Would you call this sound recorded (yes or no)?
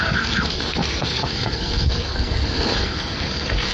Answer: no